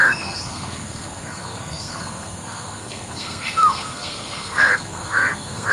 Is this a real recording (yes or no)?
no